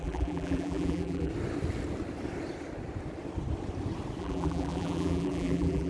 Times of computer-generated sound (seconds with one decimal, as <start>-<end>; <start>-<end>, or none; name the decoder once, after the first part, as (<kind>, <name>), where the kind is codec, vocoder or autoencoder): 0.0-1.3 (vocoder, BigVGAN v2); 4.2-5.9